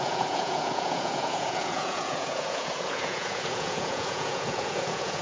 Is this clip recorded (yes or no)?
no